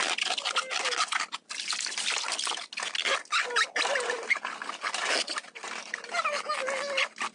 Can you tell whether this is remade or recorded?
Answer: recorded